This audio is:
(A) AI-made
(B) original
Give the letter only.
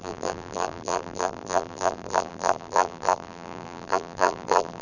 A